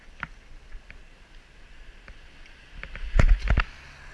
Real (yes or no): yes